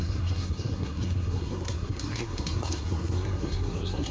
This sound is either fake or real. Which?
fake